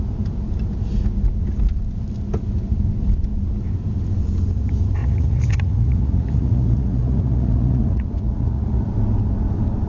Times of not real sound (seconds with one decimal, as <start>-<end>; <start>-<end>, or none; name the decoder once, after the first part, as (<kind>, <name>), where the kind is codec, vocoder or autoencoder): 5.0-8.8 (vocoder, Vocos)